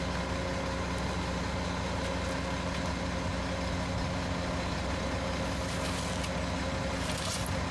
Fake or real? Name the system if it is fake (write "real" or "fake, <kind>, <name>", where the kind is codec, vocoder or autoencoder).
real